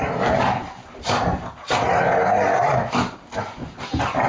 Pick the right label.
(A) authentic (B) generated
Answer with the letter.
A